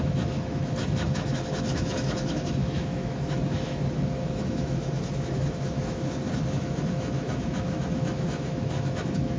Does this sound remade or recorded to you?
remade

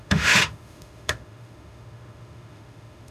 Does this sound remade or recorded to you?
remade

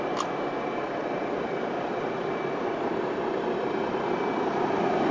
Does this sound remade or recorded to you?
recorded